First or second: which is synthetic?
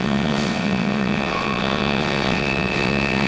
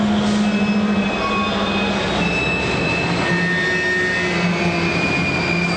first